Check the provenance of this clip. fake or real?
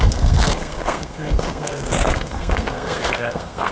fake